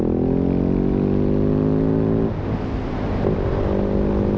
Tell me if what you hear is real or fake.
real